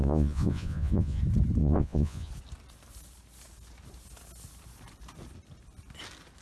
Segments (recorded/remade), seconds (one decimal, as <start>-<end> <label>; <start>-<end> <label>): 0.0-1.2 remade; 1.2-1.6 recorded; 1.6-2.3 remade; 2.3-6.4 recorded